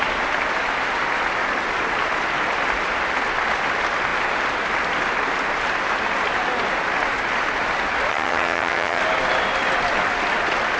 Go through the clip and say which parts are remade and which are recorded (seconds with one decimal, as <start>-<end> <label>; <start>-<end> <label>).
0.0-8.1 recorded; 8.1-9.0 remade; 9.0-10.8 recorded